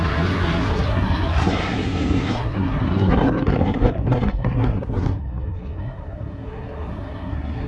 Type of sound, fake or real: fake